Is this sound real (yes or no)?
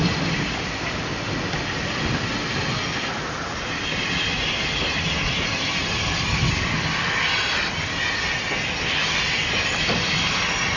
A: yes